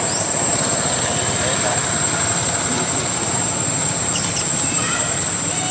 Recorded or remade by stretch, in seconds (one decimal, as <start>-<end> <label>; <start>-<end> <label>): 0.0-5.7 remade